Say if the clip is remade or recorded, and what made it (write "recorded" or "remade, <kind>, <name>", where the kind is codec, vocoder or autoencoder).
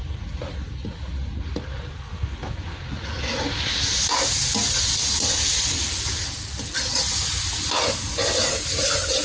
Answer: recorded